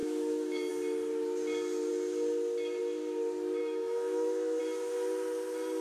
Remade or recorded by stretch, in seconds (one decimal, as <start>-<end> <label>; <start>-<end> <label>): 0.0-0.7 remade; 0.7-3.6 recorded; 3.6-4.6 remade; 4.6-5.8 recorded